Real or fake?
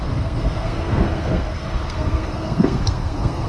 fake